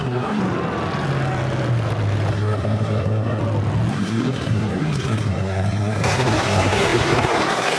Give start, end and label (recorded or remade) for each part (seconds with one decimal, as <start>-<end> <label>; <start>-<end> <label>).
0.0-0.4 remade; 0.4-2.3 recorded; 2.3-3.4 remade; 3.4-3.9 recorded; 3.9-7.8 remade